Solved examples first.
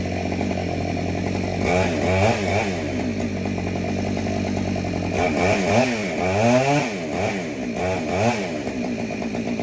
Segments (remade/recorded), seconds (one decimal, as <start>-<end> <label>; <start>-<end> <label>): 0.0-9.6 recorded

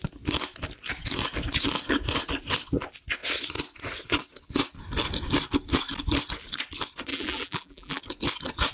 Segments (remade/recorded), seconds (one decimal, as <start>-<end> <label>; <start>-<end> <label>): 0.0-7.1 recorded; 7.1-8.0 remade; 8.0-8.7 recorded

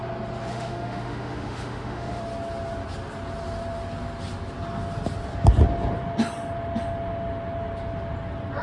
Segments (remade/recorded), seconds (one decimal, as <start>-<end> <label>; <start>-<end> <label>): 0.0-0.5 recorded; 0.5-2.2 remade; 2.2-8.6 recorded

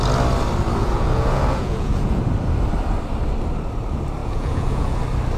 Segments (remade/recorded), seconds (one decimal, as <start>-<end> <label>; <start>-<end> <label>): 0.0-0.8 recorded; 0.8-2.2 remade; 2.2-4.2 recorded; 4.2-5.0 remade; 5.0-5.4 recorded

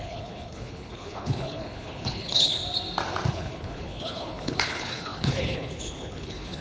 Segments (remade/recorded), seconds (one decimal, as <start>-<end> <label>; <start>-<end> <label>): 0.0-2.6 remade; 2.6-3.3 recorded; 3.3-6.6 remade